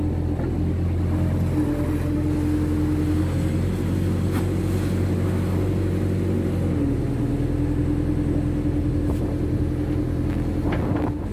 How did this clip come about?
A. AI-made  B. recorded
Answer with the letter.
B